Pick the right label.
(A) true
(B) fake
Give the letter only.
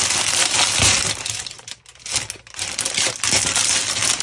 A